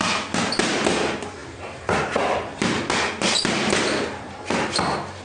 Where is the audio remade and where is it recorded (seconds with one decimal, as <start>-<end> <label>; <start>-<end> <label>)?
0.0-5.2 recorded